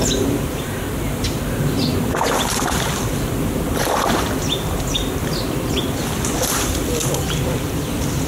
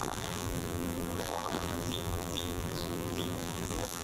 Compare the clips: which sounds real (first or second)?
first